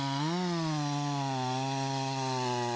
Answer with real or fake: real